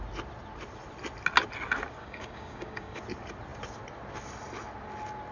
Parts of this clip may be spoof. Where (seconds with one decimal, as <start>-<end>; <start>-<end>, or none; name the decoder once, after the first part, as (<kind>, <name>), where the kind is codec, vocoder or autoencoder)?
2.0-3.0 (codec, DAC)